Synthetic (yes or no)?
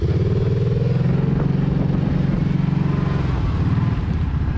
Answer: no